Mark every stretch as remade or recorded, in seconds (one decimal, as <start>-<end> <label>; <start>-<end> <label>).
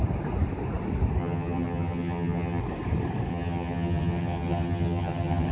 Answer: 0.0-1.2 recorded; 1.2-2.6 remade; 2.6-3.3 recorded; 3.3-5.5 remade